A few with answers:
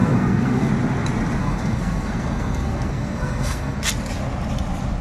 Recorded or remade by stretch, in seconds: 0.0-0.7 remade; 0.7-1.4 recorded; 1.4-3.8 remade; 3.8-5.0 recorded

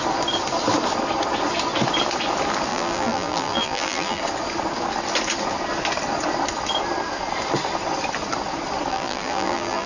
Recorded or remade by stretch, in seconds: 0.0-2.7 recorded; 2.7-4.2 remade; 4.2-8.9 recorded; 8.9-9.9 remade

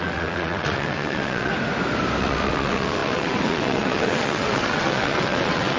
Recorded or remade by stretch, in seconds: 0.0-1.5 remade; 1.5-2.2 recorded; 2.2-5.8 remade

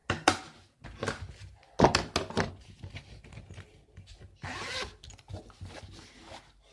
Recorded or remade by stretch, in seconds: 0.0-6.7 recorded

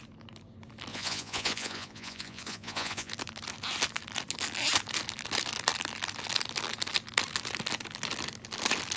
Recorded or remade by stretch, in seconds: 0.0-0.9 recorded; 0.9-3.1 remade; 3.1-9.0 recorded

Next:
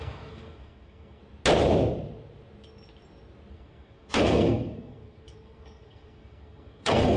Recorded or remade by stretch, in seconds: 0.0-1.2 remade; 1.2-3.5 recorded; 3.5-7.2 remade